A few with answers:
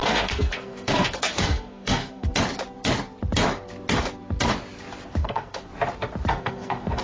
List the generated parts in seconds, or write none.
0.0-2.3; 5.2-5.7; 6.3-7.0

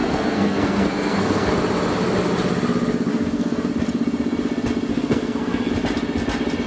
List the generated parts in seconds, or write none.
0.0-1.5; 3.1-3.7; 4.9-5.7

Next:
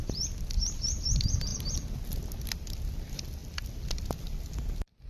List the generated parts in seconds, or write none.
none